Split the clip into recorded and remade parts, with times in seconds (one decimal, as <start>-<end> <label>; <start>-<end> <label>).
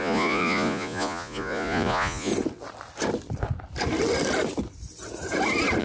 0.0-2.3 remade; 2.3-5.8 recorded